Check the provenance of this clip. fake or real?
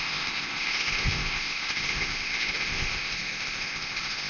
fake